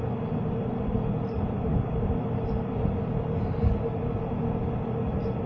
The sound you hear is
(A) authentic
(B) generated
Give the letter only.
A